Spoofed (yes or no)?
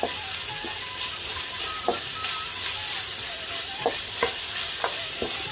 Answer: no